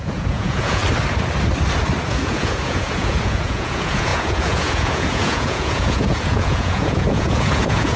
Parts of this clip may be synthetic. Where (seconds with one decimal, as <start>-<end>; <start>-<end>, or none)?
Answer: 0.0-0.8; 2.1-8.0